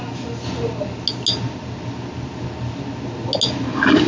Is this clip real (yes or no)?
yes